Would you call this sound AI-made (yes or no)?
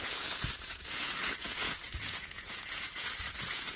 yes